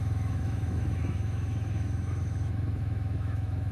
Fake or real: fake